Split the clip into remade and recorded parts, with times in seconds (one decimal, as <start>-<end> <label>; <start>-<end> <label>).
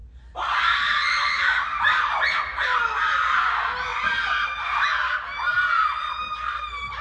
0.0-7.0 recorded